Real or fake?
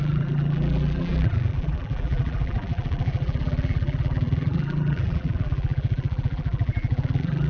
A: fake